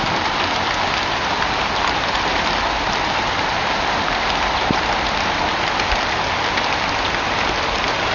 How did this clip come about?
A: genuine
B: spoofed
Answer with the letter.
A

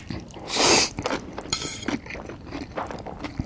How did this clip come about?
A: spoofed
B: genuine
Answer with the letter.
A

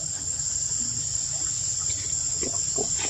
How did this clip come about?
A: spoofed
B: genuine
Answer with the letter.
B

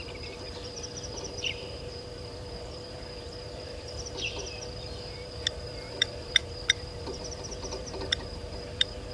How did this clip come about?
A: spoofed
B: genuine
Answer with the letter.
A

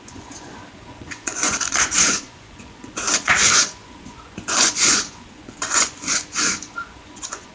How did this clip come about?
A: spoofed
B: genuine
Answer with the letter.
A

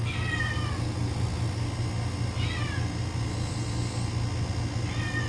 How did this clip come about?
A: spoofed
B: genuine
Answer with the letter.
B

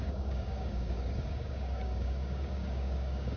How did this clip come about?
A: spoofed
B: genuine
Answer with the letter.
A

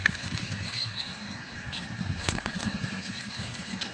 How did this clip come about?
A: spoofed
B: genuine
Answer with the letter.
A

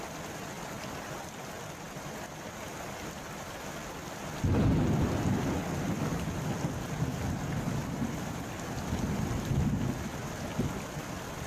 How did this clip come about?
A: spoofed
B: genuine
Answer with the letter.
B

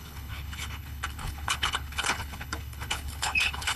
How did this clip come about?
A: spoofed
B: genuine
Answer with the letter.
A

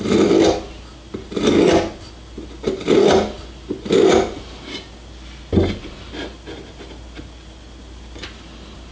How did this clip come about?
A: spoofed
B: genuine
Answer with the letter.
B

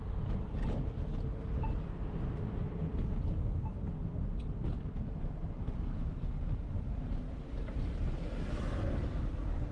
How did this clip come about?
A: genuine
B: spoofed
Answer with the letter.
A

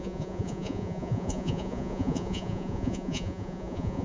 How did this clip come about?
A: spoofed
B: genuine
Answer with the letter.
A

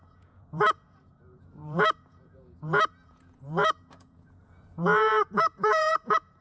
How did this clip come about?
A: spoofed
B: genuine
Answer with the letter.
A